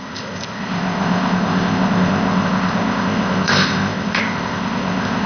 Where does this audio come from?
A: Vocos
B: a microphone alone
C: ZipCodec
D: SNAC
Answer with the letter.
C